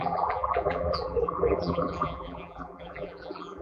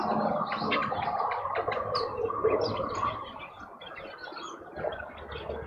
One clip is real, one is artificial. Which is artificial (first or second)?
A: first